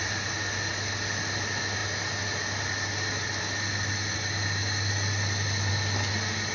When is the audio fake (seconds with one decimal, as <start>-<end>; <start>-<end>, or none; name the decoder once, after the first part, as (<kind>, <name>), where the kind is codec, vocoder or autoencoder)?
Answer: none